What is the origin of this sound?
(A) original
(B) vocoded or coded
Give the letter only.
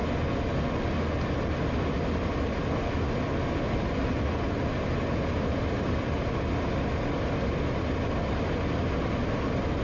A